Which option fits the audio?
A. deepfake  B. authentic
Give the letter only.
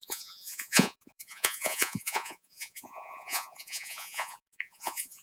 A